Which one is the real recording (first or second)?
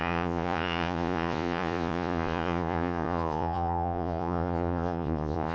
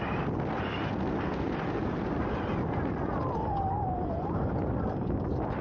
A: second